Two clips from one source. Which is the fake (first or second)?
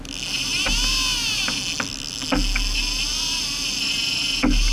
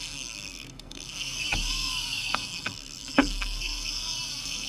second